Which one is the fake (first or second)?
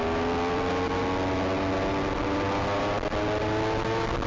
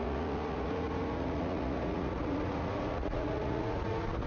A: second